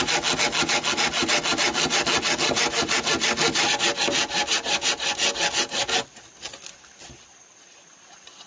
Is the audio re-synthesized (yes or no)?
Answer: no